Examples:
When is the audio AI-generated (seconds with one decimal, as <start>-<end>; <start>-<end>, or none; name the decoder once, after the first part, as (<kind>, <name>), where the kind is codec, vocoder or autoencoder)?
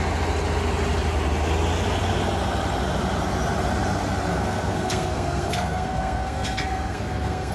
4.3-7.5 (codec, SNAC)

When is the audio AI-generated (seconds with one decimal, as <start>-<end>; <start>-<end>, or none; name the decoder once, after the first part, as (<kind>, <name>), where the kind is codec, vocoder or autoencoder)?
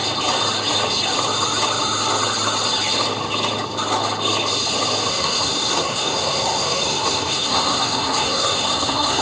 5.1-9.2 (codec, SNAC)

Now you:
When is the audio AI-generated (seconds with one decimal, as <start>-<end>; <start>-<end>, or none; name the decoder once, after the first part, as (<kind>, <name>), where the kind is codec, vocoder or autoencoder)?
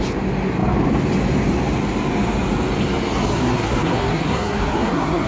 3.3-5.3 (codec, SNAC)